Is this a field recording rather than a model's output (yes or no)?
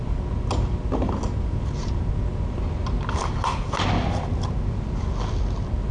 yes